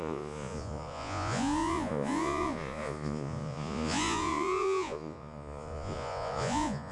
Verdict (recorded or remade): remade